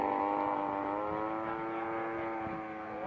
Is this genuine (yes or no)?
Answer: yes